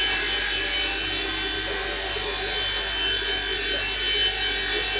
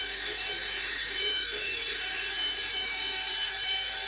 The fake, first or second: second